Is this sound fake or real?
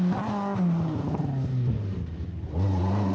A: real